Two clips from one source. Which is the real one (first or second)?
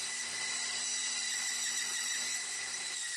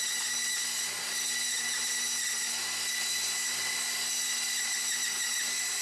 second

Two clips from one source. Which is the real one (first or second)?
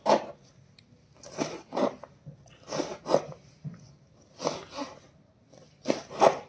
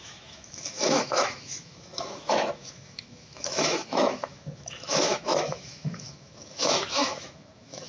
first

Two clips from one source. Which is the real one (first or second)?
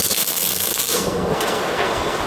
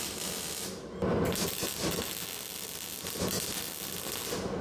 second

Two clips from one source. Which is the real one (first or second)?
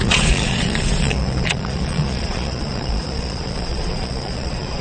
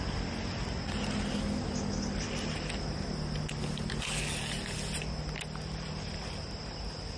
second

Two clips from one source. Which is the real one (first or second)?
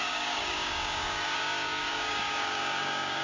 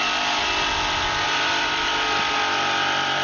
second